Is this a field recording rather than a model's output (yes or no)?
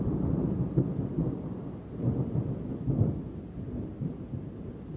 yes